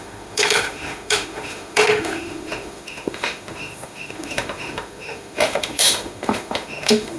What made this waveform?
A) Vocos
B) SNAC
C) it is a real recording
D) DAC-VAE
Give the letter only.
D